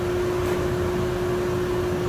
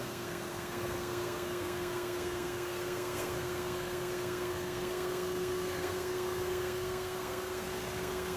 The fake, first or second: second